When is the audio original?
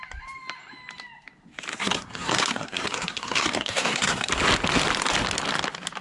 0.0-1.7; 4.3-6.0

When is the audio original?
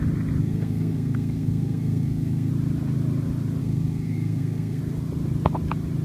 0.0-0.4; 2.5-3.6; 4.8-6.0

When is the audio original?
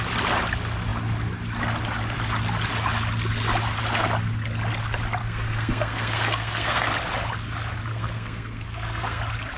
0.0-5.2; 6.9-7.9; 9.2-9.6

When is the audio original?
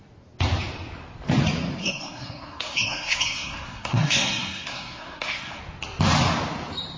0.0-1.8; 5.6-7.0